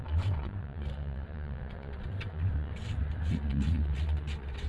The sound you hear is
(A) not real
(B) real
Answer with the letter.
A